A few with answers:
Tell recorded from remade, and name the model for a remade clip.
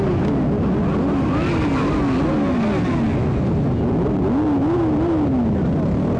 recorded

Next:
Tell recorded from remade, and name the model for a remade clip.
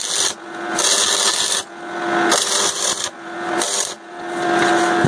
recorded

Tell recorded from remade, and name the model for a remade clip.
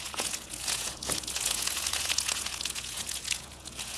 remade, vocoder, Vocos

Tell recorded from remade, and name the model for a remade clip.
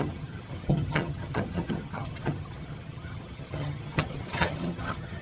remade, vocoder, HiFi-GAN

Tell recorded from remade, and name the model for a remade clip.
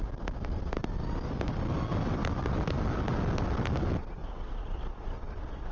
recorded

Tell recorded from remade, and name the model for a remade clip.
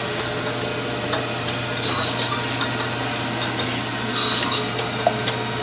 recorded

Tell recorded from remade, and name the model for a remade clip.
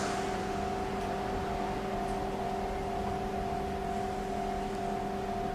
recorded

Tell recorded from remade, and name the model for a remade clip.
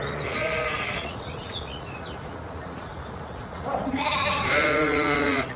remade, vocoder, Vocos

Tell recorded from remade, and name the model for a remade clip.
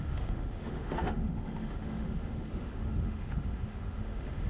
remade, autoencoder, DAC-VAE